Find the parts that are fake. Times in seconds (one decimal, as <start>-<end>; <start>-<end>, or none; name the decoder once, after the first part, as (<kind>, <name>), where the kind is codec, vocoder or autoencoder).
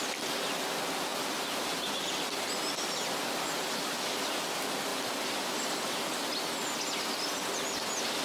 none